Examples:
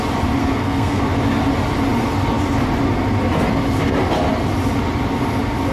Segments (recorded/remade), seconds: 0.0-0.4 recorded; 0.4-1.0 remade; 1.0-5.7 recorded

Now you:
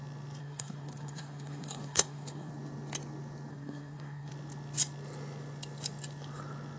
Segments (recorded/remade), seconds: 0.0-0.4 recorded; 0.4-2.5 remade; 2.5-3.5 recorded; 3.5-4.3 remade; 4.3-6.8 recorded